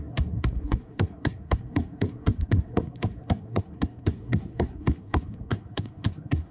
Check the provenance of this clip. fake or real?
fake